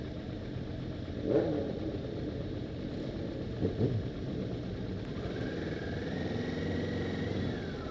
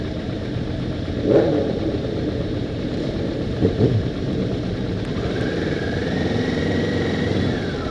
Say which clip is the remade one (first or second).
second